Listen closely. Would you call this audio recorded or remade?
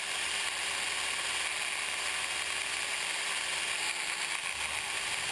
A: recorded